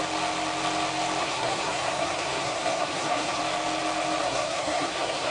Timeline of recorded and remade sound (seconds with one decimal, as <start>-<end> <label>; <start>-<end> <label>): 0.0-1.2 recorded; 1.2-3.4 remade; 3.4-4.2 recorded; 4.2-5.3 remade